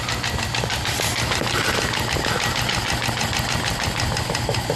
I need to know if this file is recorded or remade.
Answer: recorded